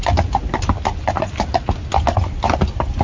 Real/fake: real